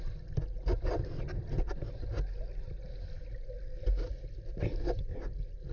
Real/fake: real